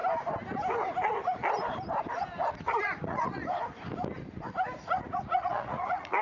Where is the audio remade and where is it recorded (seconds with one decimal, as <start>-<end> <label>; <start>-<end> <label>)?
0.0-2.5 recorded; 2.5-3.4 remade; 3.4-4.8 recorded; 4.8-6.2 remade